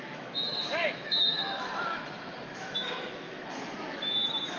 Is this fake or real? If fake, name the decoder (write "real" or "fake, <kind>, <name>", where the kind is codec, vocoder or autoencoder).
fake, autoencoder, DAC-VAE